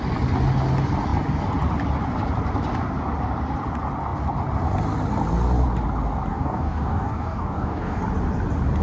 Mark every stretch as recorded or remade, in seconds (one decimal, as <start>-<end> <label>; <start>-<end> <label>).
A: 0.0-6.3 recorded; 6.3-8.0 remade; 8.0-8.8 recorded

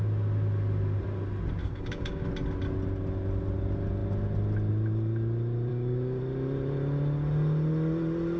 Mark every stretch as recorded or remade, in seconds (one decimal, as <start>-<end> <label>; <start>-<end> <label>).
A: 0.0-1.6 recorded; 1.6-2.3 remade; 2.3-5.7 recorded; 5.7-6.2 remade; 6.2-8.4 recorded

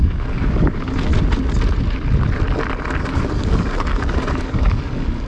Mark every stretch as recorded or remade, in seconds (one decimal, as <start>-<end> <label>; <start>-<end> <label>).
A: 0.0-1.1 remade; 1.1-3.0 recorded; 3.0-5.3 remade

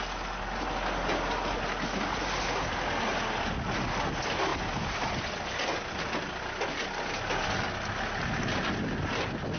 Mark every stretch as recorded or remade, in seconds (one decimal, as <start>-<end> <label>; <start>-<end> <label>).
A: 0.0-9.6 recorded

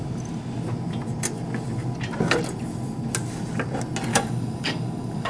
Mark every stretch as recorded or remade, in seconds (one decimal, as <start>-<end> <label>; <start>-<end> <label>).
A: 0.0-4.1 recorded; 4.1-5.3 remade

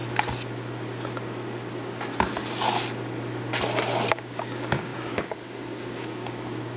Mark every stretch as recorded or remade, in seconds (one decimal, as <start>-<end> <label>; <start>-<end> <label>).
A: 0.0-4.1 recorded; 4.1-6.8 remade

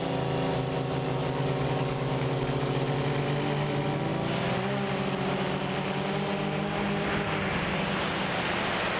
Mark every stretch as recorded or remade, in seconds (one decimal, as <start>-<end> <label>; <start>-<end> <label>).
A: 0.0-1.2 recorded; 1.2-2.8 remade; 2.8-9.0 recorded

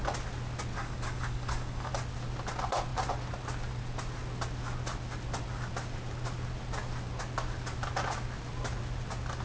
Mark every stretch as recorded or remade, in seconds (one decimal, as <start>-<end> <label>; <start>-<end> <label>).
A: 0.0-0.8 recorded; 0.8-1.9 remade; 1.9-9.4 recorded